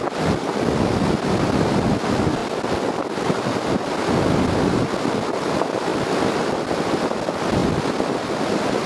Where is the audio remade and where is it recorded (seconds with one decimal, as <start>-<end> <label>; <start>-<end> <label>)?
0.0-8.9 recorded